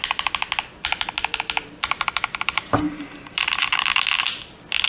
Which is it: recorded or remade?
remade